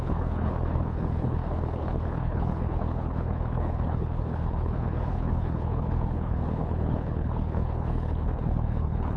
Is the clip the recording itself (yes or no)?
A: no